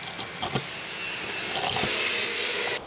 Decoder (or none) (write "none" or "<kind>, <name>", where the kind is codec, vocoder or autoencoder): none